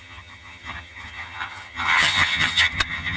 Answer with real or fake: fake